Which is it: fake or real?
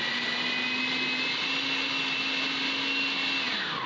real